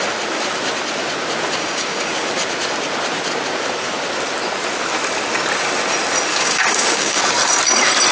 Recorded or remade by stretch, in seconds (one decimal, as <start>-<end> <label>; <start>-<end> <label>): 0.0-1.6 recorded; 1.6-2.1 remade; 2.1-6.3 recorded; 6.3-7.2 remade; 7.2-8.1 recorded